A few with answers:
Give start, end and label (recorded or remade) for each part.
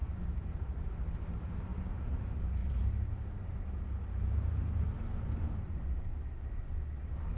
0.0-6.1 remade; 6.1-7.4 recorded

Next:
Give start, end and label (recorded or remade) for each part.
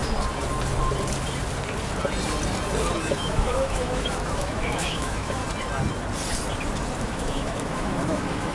0.0-3.0 recorded; 3.0-5.4 remade; 5.4-7.0 recorded; 7.0-8.5 remade